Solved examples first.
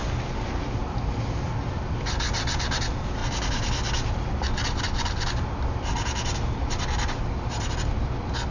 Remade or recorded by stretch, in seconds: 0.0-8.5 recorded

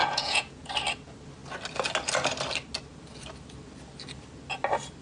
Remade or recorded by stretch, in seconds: 0.0-0.7 remade; 0.7-5.0 recorded